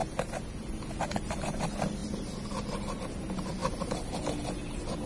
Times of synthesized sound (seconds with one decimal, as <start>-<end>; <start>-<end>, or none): none